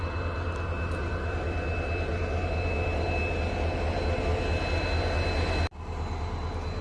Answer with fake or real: real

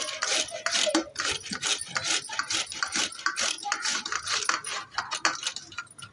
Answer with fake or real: real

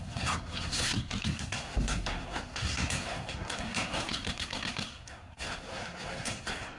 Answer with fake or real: fake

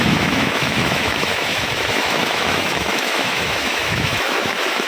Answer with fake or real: fake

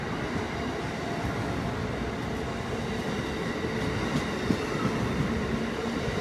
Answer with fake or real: real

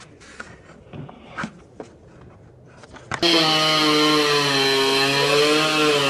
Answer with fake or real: real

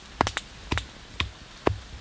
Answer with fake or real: real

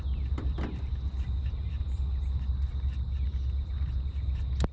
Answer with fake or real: real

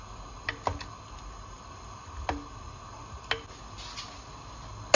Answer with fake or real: real